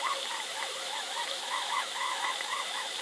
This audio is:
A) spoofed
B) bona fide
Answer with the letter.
A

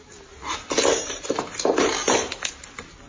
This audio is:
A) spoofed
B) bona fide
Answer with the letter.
B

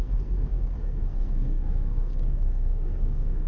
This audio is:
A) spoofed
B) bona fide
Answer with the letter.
A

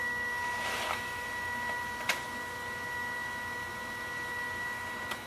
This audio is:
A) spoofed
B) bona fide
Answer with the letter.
B